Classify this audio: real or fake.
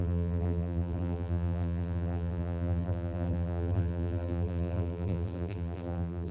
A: fake